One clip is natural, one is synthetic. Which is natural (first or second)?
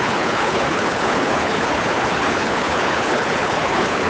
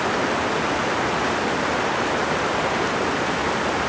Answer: second